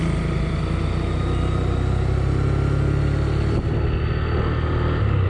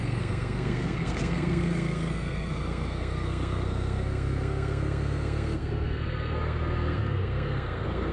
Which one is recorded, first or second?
first